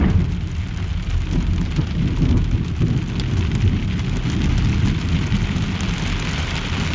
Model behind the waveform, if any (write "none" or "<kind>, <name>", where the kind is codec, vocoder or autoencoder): none